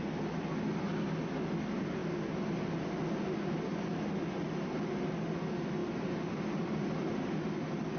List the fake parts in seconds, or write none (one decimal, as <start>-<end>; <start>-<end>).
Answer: none